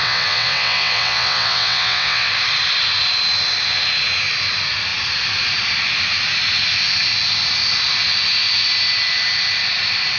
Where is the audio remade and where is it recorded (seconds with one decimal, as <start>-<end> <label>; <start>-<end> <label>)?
0.0-2.3 remade; 2.3-10.2 recorded